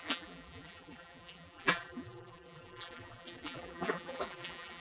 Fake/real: fake